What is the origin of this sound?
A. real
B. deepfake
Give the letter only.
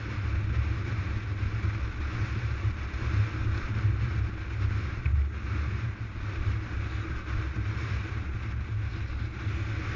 A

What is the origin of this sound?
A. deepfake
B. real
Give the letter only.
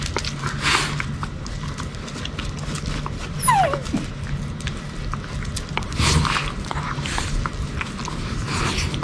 B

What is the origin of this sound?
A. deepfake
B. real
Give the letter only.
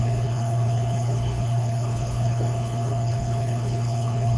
A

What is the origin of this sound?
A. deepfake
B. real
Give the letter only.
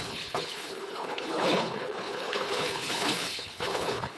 A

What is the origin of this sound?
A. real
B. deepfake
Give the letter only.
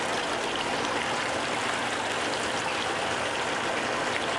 A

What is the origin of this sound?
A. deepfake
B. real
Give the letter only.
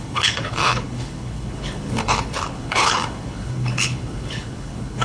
A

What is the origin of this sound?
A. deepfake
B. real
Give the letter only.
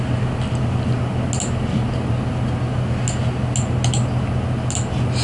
B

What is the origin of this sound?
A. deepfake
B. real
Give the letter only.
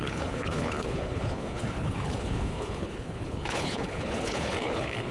A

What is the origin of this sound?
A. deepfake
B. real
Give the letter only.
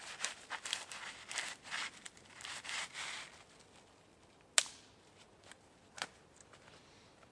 B